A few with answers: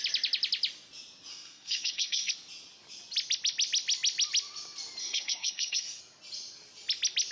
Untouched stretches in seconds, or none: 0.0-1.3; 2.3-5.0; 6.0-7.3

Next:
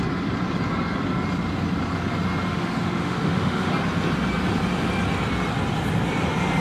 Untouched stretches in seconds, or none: 0.0-2.5; 3.7-6.6

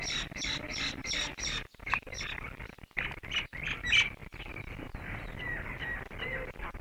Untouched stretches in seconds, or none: 0.0-6.8

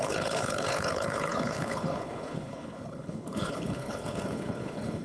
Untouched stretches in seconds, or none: none

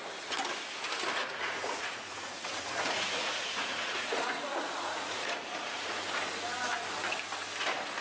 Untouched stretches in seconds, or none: 0.0-1.2; 6.0-8.0

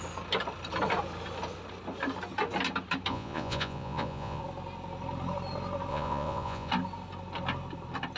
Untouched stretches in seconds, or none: 0.0-3.1; 4.4-5.9; 6.7-8.2